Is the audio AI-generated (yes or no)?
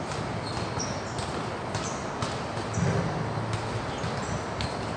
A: no